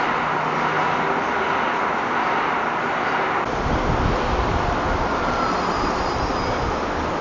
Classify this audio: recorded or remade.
recorded